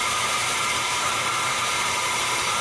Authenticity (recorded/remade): remade